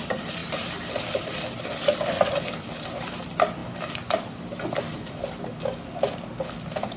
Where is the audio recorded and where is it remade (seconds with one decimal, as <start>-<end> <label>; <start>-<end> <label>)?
0.0-7.0 recorded